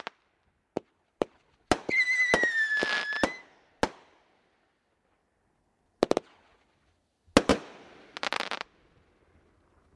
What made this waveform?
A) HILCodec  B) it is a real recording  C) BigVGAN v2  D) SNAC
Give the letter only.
B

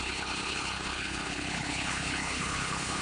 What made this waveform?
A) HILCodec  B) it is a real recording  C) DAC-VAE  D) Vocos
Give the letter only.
A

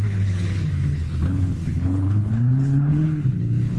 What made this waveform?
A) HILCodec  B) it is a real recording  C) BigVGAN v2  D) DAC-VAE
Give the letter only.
A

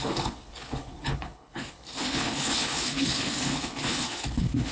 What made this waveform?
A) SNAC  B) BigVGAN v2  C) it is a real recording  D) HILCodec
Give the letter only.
D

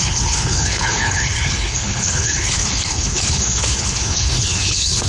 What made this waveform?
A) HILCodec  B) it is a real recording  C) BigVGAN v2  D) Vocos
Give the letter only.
A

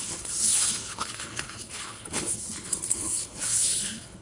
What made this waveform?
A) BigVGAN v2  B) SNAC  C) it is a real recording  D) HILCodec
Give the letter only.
D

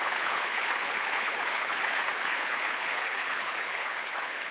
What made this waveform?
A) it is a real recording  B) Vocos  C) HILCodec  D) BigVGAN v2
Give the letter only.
C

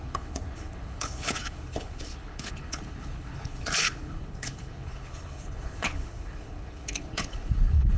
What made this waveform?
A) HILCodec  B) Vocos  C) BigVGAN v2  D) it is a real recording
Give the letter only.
A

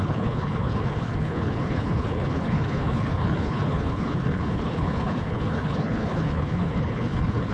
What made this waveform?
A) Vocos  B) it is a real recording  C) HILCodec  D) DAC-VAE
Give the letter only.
C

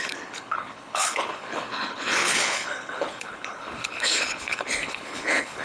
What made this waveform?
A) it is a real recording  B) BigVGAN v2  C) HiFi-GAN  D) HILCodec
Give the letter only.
D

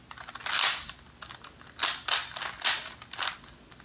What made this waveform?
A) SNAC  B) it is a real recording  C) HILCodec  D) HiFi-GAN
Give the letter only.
B